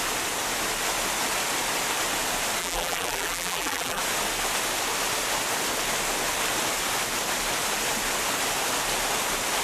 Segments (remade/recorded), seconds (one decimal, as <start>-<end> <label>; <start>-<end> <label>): 0.0-2.6 recorded; 2.6-4.0 remade; 4.0-9.6 recorded